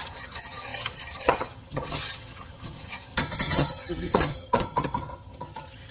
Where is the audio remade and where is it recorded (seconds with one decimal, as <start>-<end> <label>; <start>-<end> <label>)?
0.0-5.9 remade